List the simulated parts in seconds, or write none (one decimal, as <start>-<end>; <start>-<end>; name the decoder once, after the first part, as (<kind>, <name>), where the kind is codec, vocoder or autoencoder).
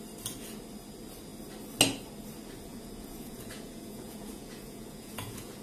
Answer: 2.7-5.6 (vocoder, Vocos)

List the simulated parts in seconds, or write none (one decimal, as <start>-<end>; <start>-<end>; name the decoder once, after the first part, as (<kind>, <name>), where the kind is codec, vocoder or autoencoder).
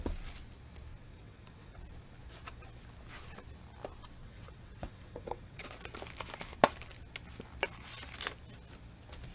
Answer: 0.9-1.8 (vocoder, WaveNeXt); 4.2-5.7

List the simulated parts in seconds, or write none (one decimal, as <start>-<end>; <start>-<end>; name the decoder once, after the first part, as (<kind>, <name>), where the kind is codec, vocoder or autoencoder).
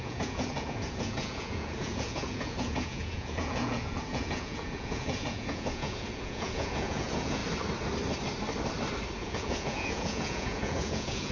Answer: 0.0-7.4 (vocoder, Vocos); 9.2-11.3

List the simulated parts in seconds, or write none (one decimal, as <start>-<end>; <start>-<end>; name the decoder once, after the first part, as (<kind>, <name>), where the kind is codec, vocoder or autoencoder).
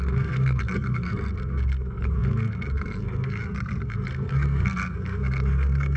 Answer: 0.0-6.0 (codec, SNAC)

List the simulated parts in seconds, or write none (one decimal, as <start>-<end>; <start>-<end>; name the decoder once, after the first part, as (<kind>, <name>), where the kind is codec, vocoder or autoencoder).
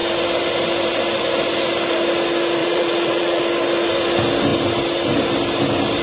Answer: 2.6-3.4 (vocoder, Vocos)